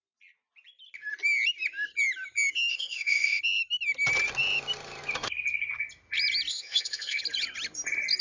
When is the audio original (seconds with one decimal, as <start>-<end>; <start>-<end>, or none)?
0.0-2.7; 3.4-6.5; 7.2-8.2